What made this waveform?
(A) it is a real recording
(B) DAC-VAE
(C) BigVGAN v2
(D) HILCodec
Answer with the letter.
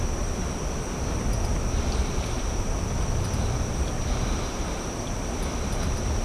A